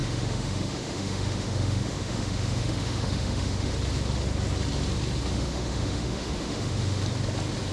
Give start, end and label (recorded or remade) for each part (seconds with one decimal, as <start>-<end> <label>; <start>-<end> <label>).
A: 0.0-3.7 remade; 3.7-5.3 recorded; 5.3-7.0 remade; 7.0-7.7 recorded